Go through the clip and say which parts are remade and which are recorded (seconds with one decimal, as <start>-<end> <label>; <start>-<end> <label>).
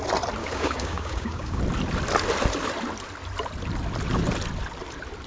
0.0-0.4 recorded; 0.4-1.6 remade; 1.6-5.3 recorded